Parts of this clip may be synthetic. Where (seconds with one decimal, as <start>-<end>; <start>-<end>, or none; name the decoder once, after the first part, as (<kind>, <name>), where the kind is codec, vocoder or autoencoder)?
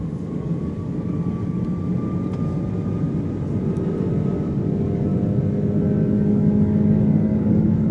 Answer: 0.0-1.6 (codec, DAC); 4.3-5.1; 6.0-7.9